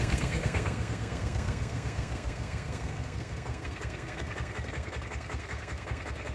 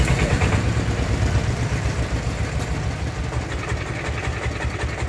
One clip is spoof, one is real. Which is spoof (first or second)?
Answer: first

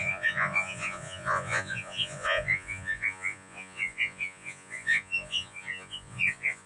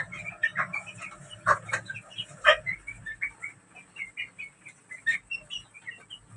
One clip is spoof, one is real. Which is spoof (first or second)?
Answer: first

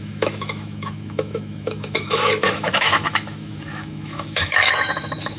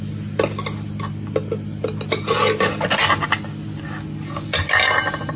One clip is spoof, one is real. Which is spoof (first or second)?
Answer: first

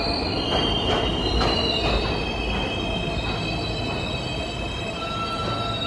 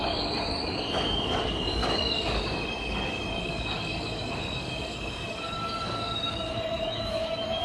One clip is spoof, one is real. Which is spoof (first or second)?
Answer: second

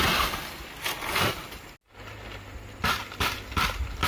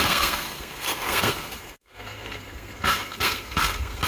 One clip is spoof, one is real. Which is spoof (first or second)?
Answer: second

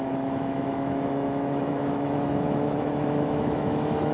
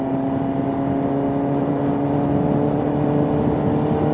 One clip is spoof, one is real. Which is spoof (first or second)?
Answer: first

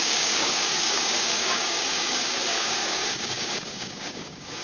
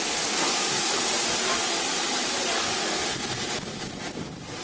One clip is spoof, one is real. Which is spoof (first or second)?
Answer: first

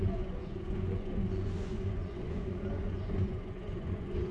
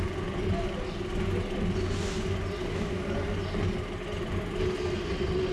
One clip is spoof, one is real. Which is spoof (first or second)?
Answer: first